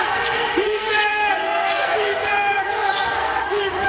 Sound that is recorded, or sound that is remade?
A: remade